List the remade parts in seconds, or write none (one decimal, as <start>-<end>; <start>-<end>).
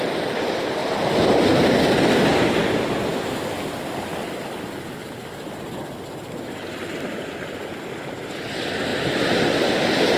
0.0-0.8; 3.0-4.1; 8.1-8.9; 9.7-10.2